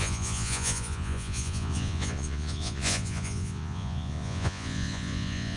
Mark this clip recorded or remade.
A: remade